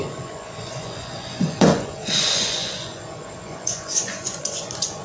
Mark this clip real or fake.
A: fake